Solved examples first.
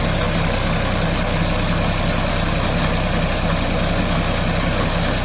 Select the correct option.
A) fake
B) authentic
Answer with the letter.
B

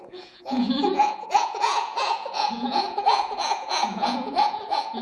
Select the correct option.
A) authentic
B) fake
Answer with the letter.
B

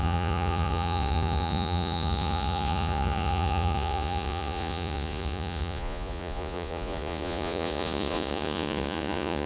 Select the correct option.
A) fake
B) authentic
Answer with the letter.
A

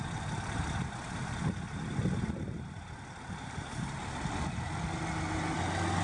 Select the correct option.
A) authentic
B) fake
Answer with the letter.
A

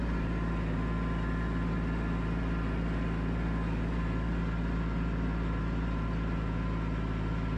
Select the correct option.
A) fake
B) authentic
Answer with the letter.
B